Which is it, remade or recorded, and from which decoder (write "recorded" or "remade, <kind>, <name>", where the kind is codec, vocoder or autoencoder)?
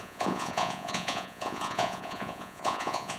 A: remade, vocoder, Vocos